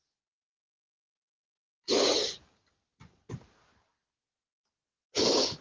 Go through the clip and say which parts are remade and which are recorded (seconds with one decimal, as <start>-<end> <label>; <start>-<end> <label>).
0.0-5.6 recorded

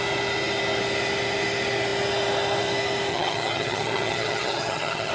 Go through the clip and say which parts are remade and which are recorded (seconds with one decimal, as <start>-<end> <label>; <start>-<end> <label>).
0.0-3.1 recorded; 3.1-5.1 remade